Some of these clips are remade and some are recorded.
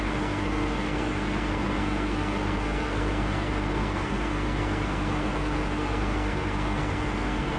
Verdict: remade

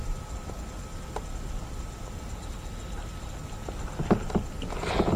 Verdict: recorded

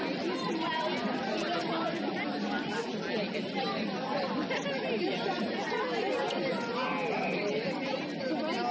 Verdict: recorded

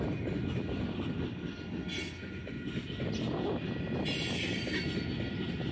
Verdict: recorded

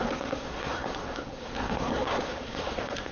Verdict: remade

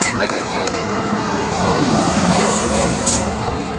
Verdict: remade